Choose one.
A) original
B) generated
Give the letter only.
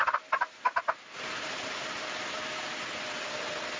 A